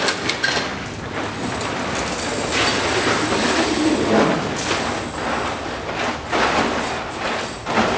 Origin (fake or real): real